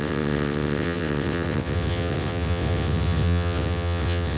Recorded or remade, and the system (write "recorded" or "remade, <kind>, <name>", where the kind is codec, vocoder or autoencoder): remade, vocoder, WaveNeXt